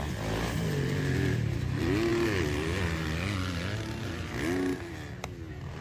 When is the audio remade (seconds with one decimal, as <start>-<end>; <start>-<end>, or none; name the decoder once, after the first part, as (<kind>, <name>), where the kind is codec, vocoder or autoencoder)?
none